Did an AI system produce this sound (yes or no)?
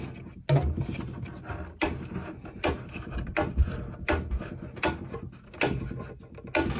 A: no